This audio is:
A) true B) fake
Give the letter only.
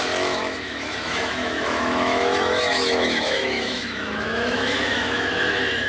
B